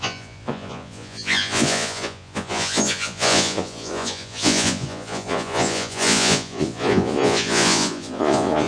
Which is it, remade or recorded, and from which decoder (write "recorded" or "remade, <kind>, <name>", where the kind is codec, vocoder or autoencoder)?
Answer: remade, vocoder, Vocos